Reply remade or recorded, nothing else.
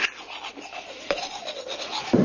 recorded